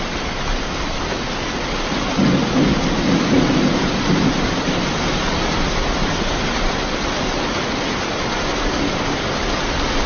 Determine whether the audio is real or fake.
real